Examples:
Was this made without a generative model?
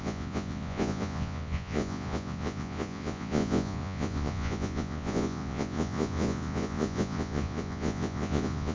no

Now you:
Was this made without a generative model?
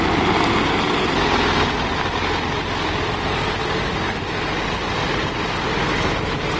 yes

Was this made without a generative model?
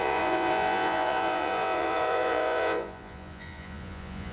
no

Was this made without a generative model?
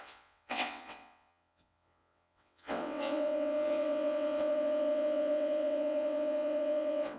no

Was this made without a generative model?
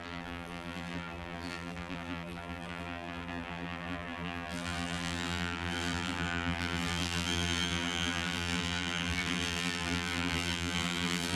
no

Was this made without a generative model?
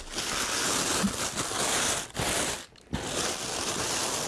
yes